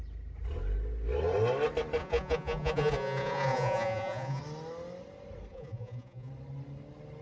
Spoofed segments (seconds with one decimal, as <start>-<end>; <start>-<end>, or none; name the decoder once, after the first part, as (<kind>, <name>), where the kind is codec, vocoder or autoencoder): 2.0-4.4 (vocoder, Vocos); 5.5-6.3